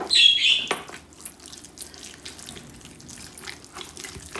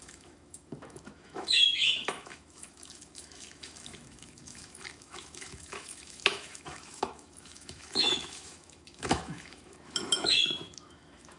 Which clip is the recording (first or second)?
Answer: first